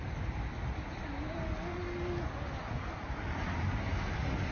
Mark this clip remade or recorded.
recorded